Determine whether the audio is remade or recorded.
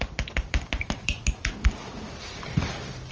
remade